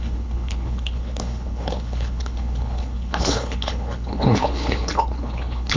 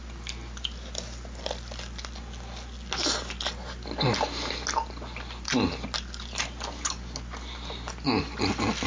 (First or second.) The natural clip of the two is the second